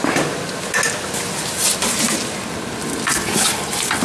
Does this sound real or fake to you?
real